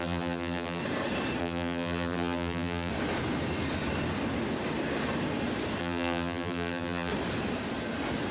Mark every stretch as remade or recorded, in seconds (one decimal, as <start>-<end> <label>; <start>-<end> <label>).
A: 0.0-0.8 remade; 0.8-1.4 recorded; 1.4-2.9 remade; 2.9-5.8 recorded; 5.8-7.1 remade; 7.1-8.3 recorded